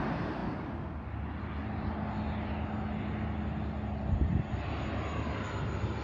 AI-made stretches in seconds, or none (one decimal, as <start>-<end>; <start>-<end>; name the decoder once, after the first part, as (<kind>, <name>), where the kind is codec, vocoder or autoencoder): none